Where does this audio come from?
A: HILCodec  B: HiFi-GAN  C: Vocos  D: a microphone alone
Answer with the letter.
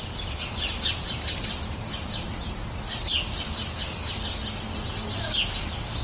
D